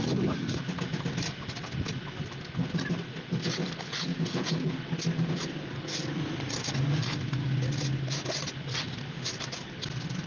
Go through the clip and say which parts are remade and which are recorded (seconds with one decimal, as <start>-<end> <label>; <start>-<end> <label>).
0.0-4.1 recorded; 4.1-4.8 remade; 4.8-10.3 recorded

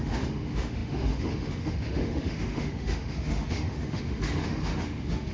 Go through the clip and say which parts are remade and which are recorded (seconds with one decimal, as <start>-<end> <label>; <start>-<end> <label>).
0.0-5.3 remade

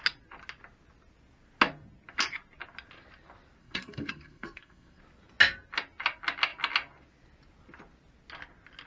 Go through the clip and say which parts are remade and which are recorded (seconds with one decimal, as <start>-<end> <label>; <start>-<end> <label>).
0.0-3.6 recorded; 3.6-5.0 remade; 5.0-8.9 recorded